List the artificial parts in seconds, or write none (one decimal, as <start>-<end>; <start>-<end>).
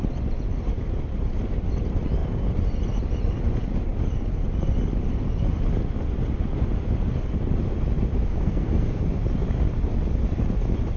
8.3-9.0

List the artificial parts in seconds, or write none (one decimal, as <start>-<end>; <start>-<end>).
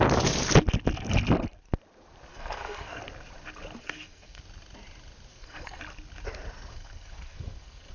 2.3-3.0; 3.8-4.4; 5.3-5.8; 6.7-7.9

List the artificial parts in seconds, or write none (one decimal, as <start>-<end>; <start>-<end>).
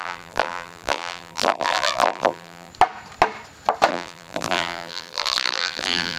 0.0-2.7; 3.9-6.2